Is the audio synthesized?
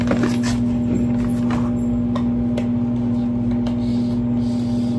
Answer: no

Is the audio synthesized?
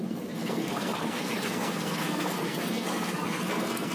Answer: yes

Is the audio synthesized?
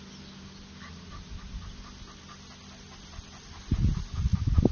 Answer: no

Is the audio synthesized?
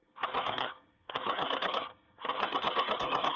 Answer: yes